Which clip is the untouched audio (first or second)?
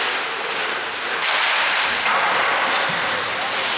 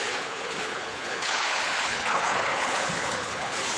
first